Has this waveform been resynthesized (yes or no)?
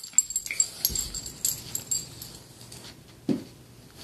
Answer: no